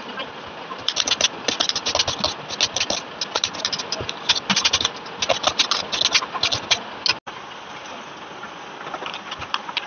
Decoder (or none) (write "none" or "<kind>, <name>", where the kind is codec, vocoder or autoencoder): none